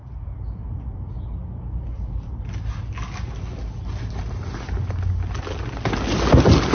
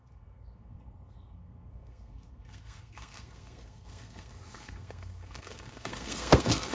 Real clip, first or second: first